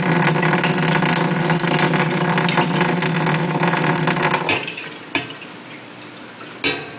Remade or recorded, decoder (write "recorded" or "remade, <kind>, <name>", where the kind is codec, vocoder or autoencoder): recorded